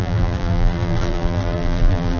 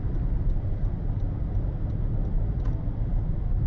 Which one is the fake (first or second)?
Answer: first